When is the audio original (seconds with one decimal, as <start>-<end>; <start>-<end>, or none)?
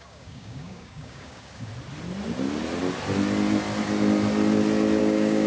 1.7-5.0